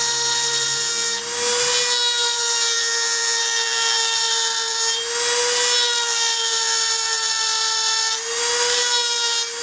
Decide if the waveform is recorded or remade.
recorded